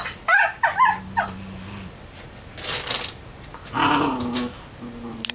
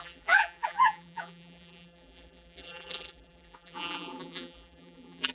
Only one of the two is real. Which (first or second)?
first